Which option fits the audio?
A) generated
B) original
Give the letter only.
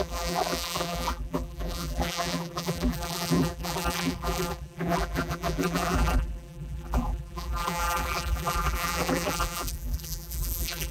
A